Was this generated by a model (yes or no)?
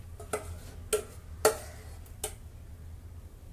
no